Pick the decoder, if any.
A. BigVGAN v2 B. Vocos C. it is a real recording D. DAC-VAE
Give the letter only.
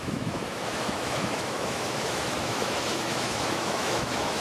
D